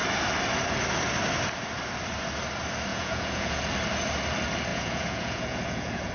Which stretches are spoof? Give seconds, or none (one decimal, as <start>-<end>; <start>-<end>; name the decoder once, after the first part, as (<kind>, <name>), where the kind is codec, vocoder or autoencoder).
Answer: 2.9-3.6 (vocoder, Vocos); 4.7-6.1

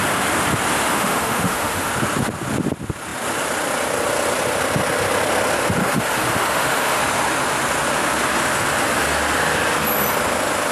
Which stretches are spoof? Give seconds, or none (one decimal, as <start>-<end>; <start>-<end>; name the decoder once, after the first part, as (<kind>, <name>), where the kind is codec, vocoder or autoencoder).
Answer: 0.9-1.9 (autoencoder, DAC-VAE); 5.8-7.0

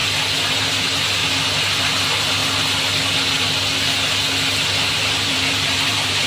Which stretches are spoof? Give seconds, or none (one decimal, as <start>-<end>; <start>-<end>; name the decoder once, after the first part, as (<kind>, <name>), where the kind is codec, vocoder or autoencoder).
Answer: 0.5-1.2 (vocoder, BigVGAN v2); 1.8-2.4; 4.9-6.3

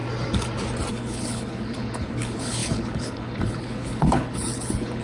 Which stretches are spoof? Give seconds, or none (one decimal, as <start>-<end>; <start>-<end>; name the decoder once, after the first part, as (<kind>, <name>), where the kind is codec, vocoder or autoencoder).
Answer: 0.9-5.0 (codec, HILCodec)

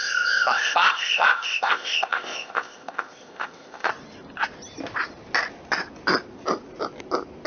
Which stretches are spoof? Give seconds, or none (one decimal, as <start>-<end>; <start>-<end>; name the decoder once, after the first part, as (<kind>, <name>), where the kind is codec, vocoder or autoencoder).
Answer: 0.0-3.9 (codec, ZipCodec)

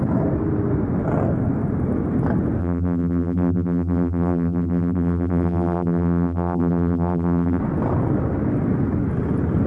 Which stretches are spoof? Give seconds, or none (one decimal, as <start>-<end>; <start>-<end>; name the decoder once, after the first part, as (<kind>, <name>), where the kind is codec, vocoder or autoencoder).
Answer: 2.6-7.6 (vocoder, BigVGAN v2)